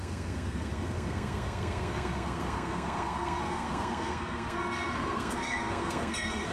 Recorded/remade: remade